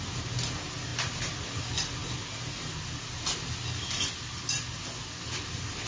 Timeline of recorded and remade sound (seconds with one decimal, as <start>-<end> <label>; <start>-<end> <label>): 0.0-5.9 recorded